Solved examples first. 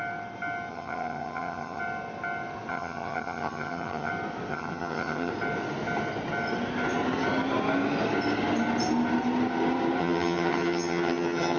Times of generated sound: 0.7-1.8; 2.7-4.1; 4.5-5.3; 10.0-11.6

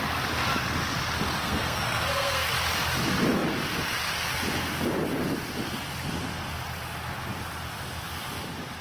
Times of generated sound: 1.4-2.5

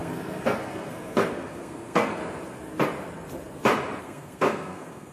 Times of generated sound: 0.0-2.2; 4.0-5.1

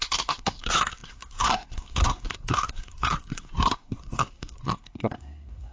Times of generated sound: 0.0-5.7